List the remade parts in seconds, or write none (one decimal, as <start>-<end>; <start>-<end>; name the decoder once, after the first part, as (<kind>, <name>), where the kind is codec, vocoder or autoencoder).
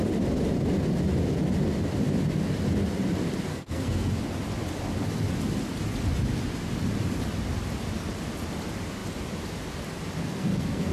3.5-4.1 (codec, SNAC); 10.2-10.9